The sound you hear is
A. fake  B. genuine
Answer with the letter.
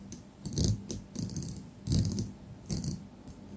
B